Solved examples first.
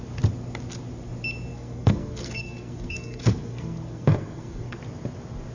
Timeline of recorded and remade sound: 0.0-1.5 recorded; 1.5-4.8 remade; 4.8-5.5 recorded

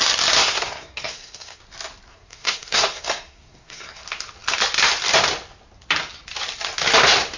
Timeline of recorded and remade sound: 0.0-0.4 recorded; 0.4-1.6 remade; 1.6-2.1 recorded; 2.1-4.0 remade; 4.0-7.4 recorded